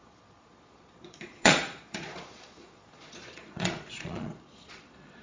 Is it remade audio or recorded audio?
remade